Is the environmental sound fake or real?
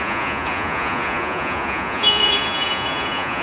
fake